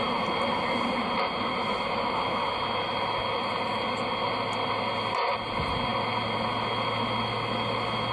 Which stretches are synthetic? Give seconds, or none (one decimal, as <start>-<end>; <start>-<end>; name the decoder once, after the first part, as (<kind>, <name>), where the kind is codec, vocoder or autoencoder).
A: 1.5-2.2 (autoencoder, DAC-VAE)